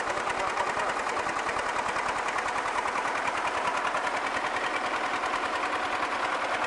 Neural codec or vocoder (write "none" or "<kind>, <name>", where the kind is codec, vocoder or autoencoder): none